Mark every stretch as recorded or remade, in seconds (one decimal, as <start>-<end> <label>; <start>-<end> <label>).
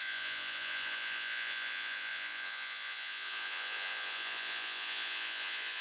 0.0-5.8 remade